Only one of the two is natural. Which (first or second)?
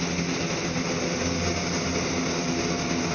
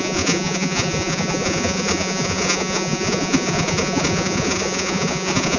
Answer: first